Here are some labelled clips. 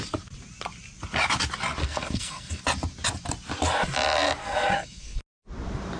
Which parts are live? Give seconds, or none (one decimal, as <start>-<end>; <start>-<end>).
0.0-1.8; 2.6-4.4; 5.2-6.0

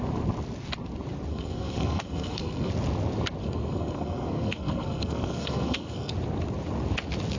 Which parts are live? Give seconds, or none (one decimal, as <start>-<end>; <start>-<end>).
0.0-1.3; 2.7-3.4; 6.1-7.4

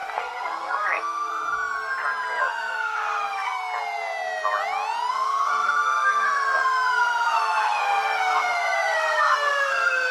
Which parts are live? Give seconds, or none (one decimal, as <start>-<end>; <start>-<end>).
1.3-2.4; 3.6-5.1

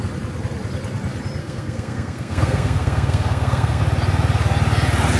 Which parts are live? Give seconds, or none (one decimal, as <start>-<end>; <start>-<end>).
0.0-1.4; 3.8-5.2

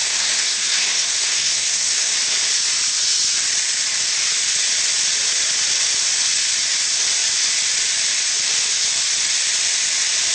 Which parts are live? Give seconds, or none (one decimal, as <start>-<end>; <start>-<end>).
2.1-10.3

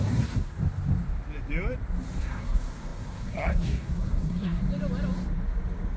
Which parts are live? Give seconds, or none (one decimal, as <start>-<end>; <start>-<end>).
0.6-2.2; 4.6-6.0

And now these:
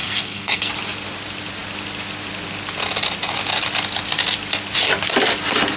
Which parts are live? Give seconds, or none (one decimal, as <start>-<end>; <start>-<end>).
0.7-5.8

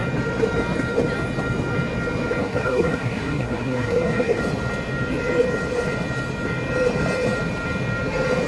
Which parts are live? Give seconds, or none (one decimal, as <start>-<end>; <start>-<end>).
0.0-2.4; 4.4-8.5